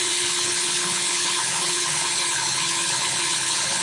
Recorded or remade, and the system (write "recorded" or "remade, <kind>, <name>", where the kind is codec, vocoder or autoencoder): remade, codec, HILCodec